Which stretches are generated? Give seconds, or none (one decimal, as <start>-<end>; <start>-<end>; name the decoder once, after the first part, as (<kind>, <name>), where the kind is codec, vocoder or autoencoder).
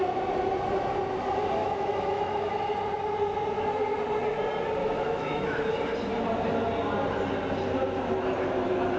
1.6-2.6 (autoencoder, DAC-VAE); 4.8-5.7